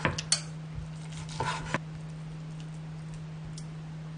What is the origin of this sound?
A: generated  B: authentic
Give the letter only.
B